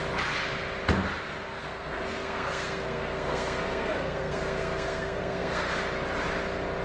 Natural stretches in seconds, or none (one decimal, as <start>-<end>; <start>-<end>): 0.0-1.6; 5.7-6.8